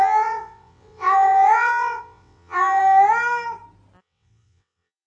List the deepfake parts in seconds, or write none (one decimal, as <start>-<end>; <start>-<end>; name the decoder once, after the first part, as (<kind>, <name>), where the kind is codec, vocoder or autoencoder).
0.0-2.8 (vocoder, WaveNeXt); 4.0-5.1